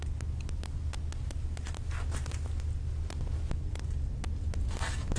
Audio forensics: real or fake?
real